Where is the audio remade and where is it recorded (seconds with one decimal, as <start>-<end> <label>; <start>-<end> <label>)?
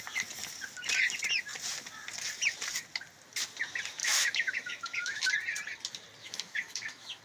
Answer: 0.0-4.0 recorded; 4.0-5.3 remade; 5.3-6.2 recorded; 6.2-7.2 remade